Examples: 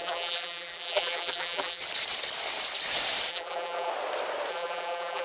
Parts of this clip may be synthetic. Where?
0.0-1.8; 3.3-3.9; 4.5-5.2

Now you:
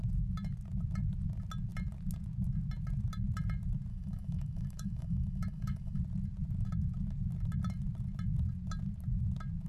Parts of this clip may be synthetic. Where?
3.9-6.0

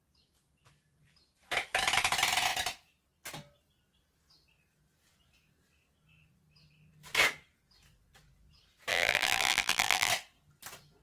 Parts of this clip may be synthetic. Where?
8.9-10.1

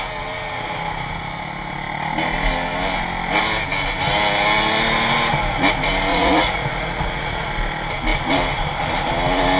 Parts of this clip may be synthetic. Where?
6.1-7.5

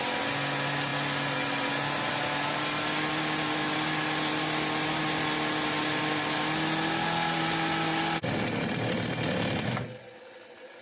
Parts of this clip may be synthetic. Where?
none

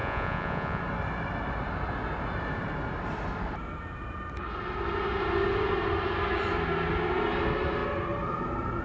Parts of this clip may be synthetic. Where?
0.0-0.8

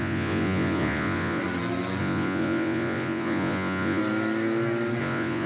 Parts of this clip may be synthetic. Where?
0.0-1.4; 2.0-4.0; 5.0-5.5